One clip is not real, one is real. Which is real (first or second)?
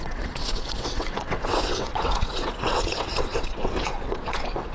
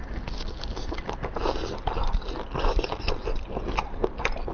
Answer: second